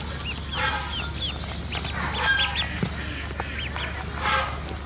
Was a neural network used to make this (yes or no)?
no